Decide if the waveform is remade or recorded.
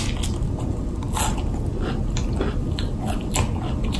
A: recorded